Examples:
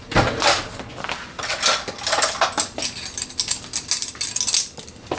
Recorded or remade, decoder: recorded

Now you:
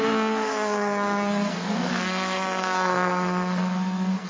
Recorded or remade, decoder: remade, codec, SNAC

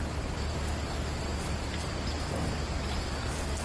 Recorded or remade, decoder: recorded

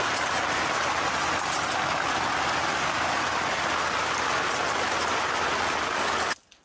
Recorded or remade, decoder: recorded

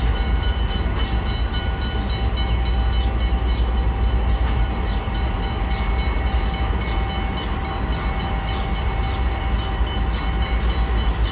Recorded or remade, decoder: recorded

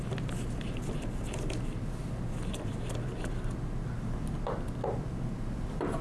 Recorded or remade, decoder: recorded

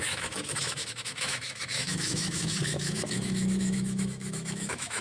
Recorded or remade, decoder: remade, autoencoder, DAC-VAE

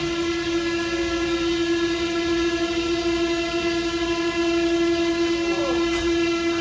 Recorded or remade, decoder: recorded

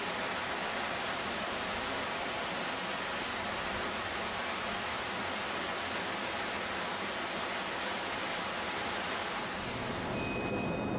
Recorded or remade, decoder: recorded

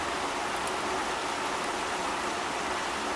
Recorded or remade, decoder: recorded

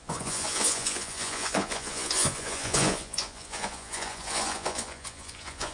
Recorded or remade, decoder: remade, vocoder, Vocos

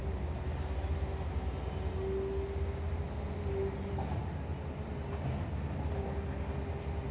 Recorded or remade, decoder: recorded